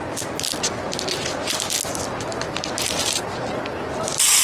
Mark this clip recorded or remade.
recorded